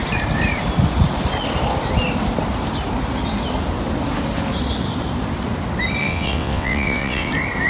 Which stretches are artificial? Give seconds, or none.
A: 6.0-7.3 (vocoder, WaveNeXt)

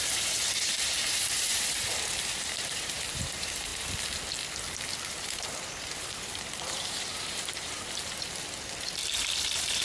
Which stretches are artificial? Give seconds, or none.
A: 0.0-3.7 (vocoder, BigVGAN v2); 5.1-9.8